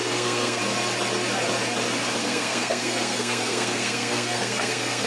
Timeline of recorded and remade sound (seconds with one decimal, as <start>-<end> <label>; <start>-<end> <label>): 0.0-0.6 remade; 0.6-2.2 recorded; 2.2-5.1 remade